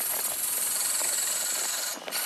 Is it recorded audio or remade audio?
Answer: recorded